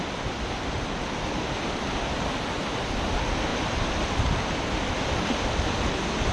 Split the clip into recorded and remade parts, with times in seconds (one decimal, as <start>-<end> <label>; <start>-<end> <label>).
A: 0.0-6.3 recorded